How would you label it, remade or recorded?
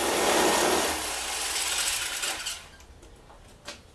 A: recorded